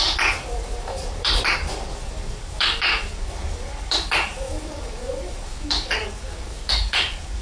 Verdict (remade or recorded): remade